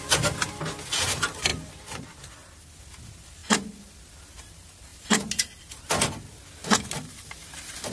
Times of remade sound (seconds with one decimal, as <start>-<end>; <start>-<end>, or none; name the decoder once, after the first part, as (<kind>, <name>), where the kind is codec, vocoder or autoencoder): none